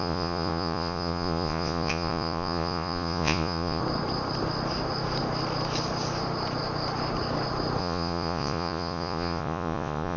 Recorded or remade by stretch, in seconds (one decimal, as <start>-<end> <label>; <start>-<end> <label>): 0.0-3.8 remade; 3.8-7.8 recorded; 7.8-10.2 remade